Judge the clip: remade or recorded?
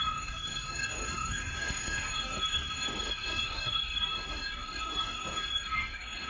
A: remade